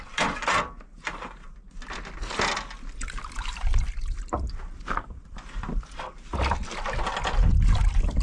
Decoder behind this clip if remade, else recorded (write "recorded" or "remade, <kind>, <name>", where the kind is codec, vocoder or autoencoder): recorded